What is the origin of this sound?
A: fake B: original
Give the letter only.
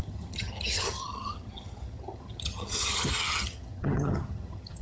A